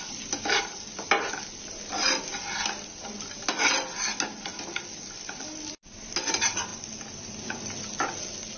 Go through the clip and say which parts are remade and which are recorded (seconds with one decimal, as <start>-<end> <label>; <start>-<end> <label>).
0.0-8.6 recorded

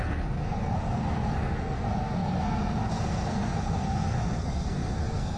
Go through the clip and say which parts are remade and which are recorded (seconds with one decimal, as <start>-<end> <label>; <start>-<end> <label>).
0.0-5.4 remade